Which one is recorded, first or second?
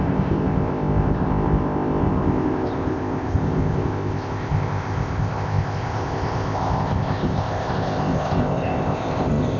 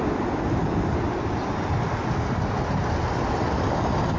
second